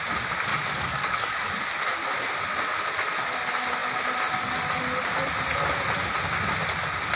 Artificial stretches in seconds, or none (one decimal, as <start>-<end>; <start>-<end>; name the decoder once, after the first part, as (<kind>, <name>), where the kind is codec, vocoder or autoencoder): 0.5-1.5 (codec, DAC)